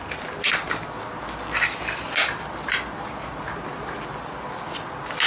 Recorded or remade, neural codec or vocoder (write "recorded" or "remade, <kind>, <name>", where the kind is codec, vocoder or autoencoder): recorded